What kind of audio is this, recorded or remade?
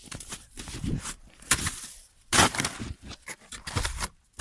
recorded